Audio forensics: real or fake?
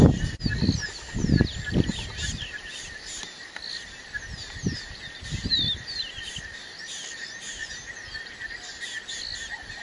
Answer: real